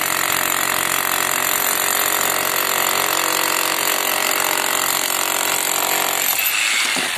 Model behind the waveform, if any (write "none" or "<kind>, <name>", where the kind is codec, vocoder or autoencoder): none